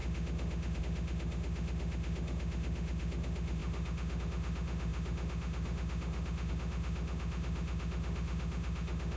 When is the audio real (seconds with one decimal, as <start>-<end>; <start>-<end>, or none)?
none